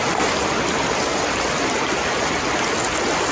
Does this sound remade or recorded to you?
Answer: recorded